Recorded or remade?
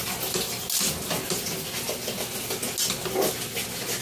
recorded